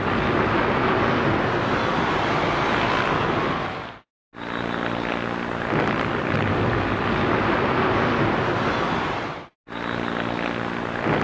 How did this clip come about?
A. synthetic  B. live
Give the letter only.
B